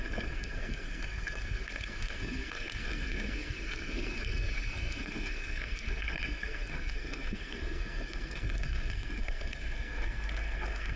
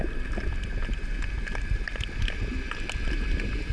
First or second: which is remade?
first